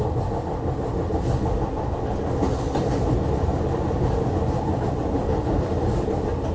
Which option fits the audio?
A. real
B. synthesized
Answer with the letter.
A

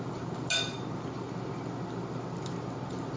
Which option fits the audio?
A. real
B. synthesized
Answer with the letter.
A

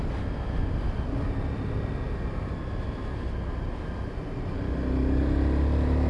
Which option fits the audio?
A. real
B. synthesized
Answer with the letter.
A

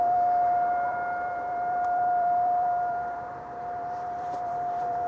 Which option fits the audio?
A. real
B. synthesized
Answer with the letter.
B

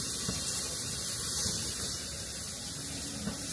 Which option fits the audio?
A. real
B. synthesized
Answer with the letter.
B